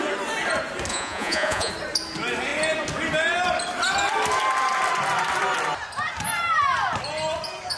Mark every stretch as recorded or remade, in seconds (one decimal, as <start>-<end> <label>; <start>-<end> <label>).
0.0-0.9 recorded; 0.9-1.7 remade; 1.7-7.8 recorded